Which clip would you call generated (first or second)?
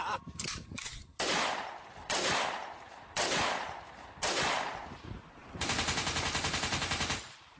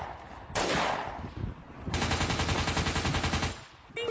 first